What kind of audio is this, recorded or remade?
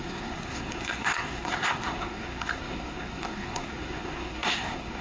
remade